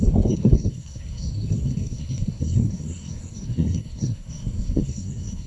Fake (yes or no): yes